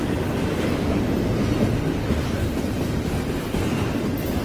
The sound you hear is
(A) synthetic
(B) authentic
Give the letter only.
B